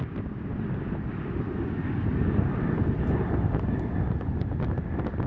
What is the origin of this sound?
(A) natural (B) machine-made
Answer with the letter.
A